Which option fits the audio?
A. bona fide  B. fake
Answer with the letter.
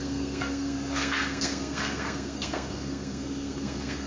B